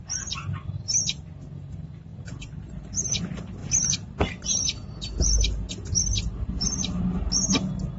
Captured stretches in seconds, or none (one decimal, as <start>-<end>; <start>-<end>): 0.0-2.1; 3.2-3.6; 7.3-8.0